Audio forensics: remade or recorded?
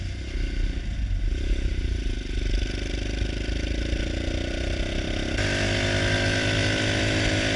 recorded